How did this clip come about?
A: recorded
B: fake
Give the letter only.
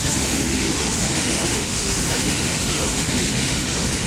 B